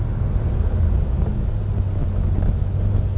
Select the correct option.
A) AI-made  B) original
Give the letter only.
B